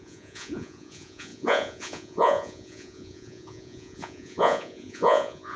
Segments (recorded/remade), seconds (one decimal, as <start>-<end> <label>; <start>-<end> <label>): 0.0-5.6 remade